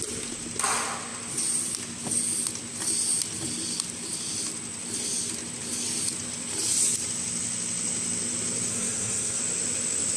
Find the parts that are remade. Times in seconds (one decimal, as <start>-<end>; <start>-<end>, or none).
8.7-9.4